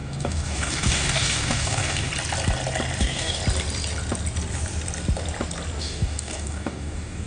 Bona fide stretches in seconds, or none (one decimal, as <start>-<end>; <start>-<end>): 2.1-3.0; 3.4-5.8